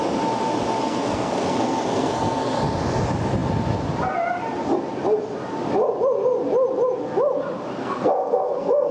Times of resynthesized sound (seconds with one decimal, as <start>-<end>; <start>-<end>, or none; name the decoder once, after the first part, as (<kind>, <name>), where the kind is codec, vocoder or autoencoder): 0.8-2.6 (codec, SNAC); 7.8-8.9